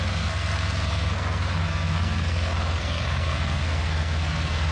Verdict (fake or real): fake